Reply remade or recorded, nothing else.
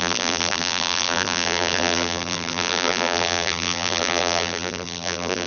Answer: remade